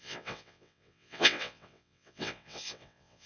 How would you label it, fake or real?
fake